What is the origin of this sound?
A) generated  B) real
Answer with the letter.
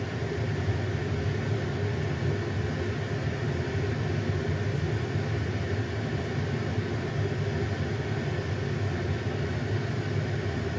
B